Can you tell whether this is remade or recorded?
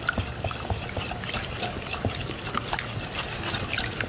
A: recorded